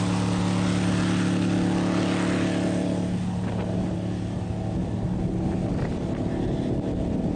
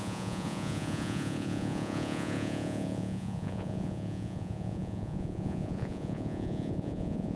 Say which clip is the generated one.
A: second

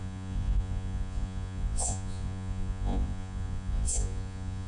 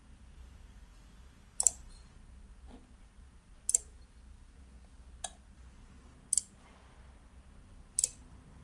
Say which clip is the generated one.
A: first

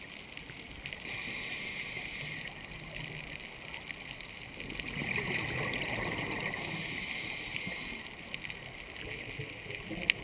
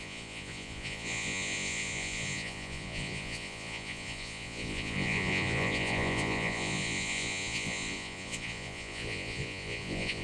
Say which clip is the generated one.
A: second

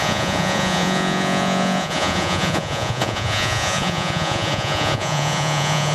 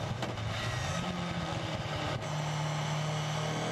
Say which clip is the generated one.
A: first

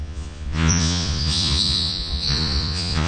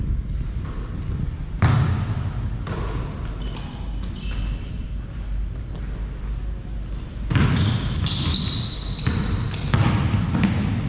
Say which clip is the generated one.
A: first